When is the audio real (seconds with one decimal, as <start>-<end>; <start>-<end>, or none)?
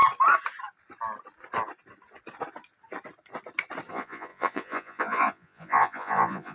0.0-3.9